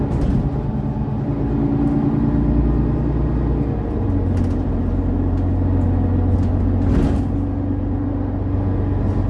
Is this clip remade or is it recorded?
recorded